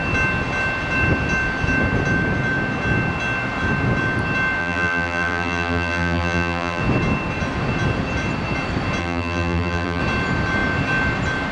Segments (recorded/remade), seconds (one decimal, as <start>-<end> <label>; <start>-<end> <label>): 0.0-4.6 recorded; 4.6-6.8 remade; 6.8-9.0 recorded; 9.0-10.0 remade; 10.0-11.5 recorded